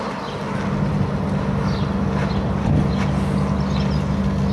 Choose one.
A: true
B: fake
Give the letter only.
A